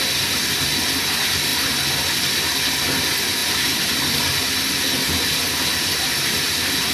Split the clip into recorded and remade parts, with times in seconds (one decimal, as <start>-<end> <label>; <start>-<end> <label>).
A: 0.0-6.9 recorded